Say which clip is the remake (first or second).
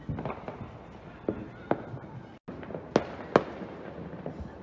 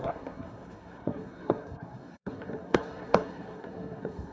second